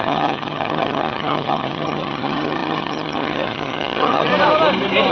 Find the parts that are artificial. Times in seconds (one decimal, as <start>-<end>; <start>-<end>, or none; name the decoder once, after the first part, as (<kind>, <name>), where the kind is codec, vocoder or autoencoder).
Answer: 0.0-4.3 (vocoder, HiFi-GAN)